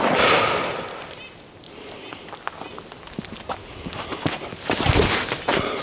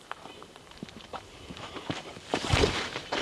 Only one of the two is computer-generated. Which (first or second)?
second